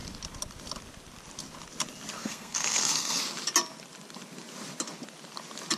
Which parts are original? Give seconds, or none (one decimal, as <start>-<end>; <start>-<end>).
0.0-2.2; 3.2-5.8